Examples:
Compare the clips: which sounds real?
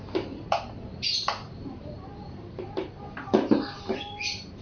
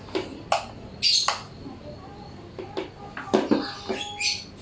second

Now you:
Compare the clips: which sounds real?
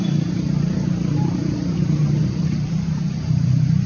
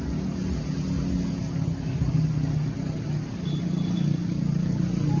second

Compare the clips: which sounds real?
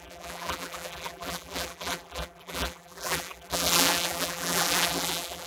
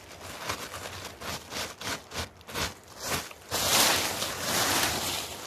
second